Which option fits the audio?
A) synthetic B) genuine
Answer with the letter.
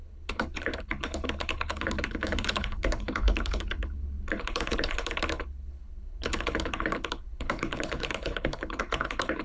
A